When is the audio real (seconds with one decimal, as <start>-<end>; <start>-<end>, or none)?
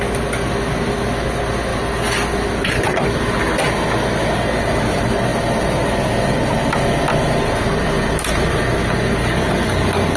0.0-9.2